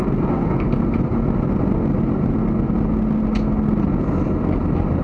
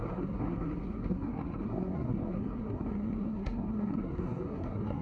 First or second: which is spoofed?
second